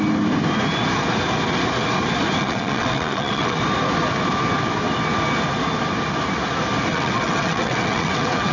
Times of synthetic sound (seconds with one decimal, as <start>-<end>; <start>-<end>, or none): 2.4-3.6; 6.9-8.5